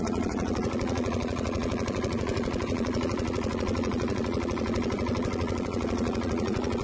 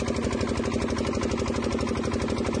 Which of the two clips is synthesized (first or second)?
first